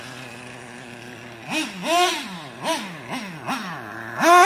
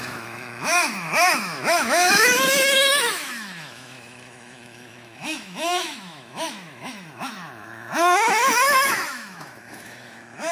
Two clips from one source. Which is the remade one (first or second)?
second